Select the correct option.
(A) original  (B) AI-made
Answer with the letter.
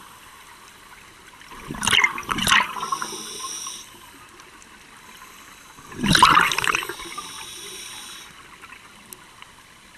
A